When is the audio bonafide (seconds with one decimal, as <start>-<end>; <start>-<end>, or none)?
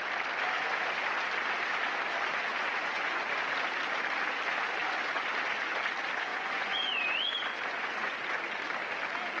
0.0-2.5; 3.2-4.8; 5.3-6.3; 8.4-9.4